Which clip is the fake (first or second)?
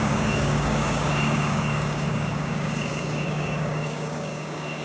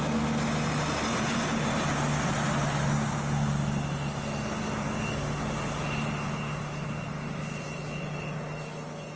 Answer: first